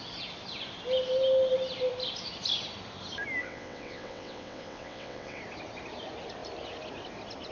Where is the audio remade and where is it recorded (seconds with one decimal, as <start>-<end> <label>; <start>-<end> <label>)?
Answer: 0.0-3.4 recorded; 3.4-5.4 remade; 5.4-7.5 recorded